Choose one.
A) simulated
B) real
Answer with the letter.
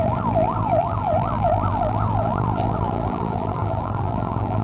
A